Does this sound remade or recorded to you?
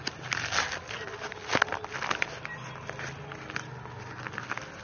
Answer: recorded